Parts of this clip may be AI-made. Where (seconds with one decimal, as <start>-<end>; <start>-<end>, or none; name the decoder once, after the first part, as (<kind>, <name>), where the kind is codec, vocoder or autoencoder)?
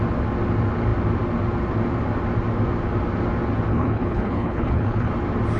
3.7-5.1 (codec, HILCodec)